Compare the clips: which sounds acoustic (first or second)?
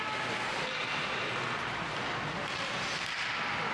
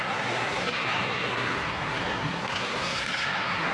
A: first